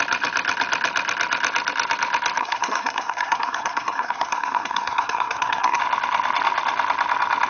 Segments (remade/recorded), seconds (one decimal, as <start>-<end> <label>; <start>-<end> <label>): 0.0-2.4 recorded; 2.4-5.8 remade; 5.8-7.5 recorded